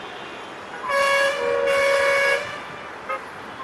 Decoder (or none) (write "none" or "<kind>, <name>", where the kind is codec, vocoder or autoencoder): none